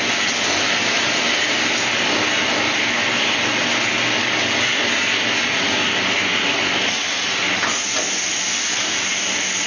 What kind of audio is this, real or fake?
real